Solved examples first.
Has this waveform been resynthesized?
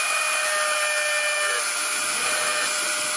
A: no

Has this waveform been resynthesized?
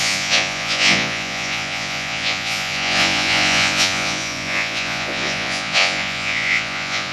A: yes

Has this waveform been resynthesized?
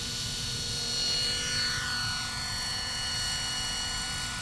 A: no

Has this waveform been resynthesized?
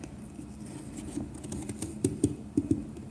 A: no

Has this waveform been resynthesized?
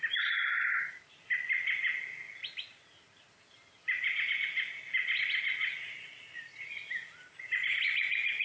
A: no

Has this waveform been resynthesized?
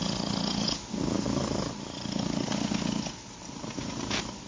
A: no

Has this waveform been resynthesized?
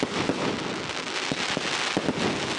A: no